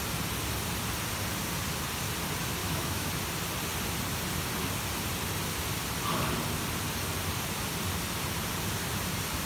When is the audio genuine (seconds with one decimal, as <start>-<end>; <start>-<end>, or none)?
0.0-2.6; 3.1-9.5